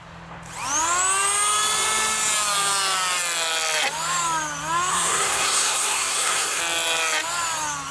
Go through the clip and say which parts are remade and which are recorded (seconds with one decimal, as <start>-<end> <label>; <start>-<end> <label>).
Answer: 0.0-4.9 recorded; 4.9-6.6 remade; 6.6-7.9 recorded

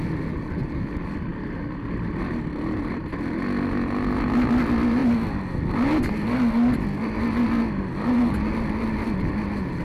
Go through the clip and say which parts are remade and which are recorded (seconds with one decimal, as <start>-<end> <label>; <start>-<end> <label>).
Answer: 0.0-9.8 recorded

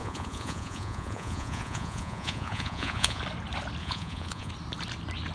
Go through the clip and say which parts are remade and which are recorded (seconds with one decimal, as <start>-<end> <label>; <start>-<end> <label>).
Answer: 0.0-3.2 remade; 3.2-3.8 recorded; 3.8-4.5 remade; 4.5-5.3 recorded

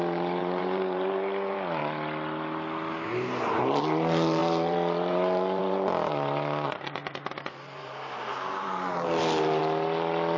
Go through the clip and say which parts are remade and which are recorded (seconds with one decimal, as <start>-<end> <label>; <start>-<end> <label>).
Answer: 0.0-1.8 remade; 1.8-3.6 recorded; 3.6-9.6 remade; 9.6-10.4 recorded

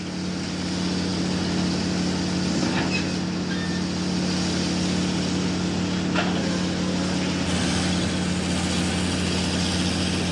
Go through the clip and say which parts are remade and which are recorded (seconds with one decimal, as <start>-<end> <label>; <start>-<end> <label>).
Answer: 0.0-10.3 recorded

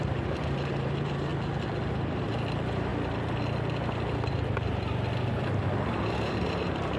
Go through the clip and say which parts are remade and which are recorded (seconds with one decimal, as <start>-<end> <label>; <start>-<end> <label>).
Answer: 0.0-1.3 remade; 1.3-1.9 recorded; 1.9-2.9 remade; 2.9-5.8 recorded; 5.8-7.0 remade

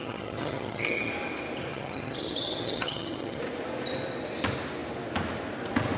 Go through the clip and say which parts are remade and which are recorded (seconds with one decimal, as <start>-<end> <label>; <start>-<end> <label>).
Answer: 0.0-1.1 remade; 1.1-1.7 recorded; 1.7-3.4 remade; 3.4-6.0 recorded